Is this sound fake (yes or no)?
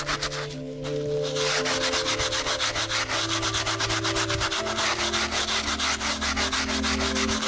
no